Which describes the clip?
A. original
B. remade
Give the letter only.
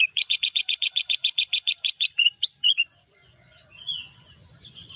B